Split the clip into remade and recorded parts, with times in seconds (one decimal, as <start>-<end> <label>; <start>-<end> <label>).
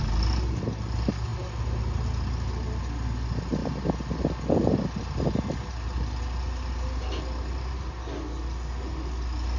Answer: 0.0-9.6 recorded